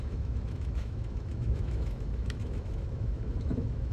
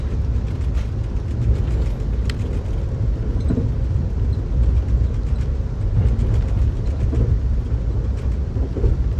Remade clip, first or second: first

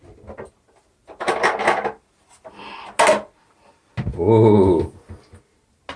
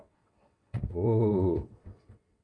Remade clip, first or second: second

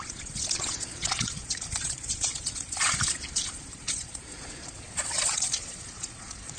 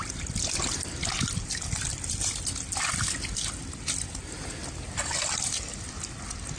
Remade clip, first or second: first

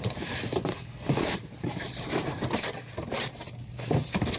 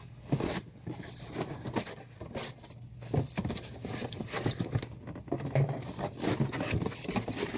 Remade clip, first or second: first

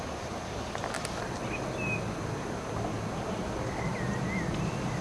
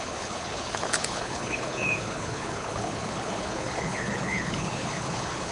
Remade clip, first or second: second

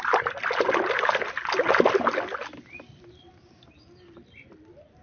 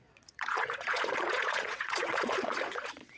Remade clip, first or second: second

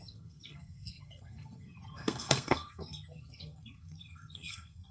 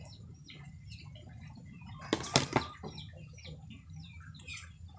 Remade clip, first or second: first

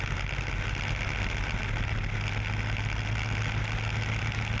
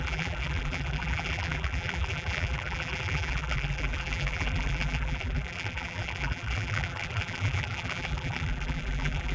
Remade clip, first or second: second